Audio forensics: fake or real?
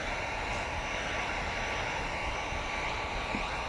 real